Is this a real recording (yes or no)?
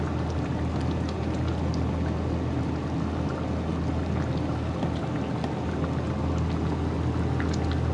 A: yes